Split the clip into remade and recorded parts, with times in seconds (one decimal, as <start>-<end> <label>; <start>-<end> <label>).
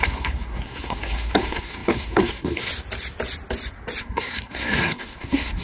0.0-2.7 remade; 2.7-4.0 recorded; 4.0-5.6 remade